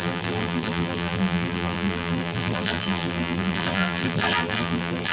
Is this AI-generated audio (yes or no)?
yes